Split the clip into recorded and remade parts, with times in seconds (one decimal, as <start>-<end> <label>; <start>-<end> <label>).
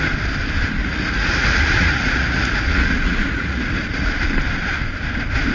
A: 0.0-0.8 recorded; 0.8-4.1 remade; 4.1-5.5 recorded